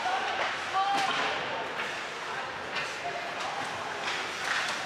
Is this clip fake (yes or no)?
no